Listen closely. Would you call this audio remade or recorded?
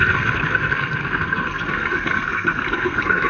remade